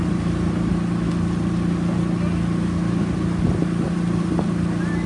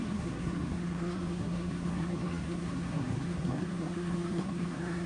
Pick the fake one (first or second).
second